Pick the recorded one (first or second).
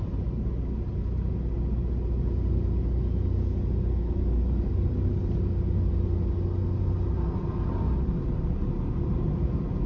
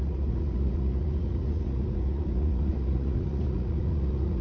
first